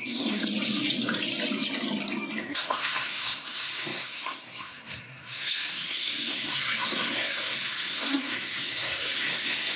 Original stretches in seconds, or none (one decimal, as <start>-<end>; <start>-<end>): 0.4-2.4